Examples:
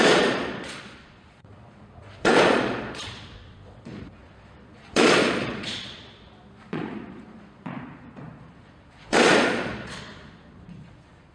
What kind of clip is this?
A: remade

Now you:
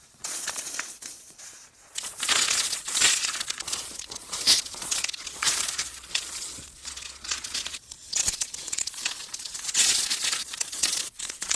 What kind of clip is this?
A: remade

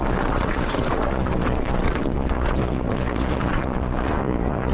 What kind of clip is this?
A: remade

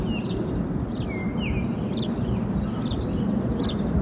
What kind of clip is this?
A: recorded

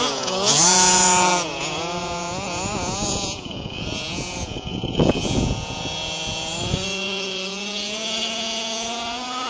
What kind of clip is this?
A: remade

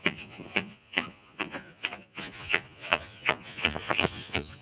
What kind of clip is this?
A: remade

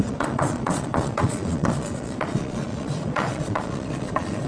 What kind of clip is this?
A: remade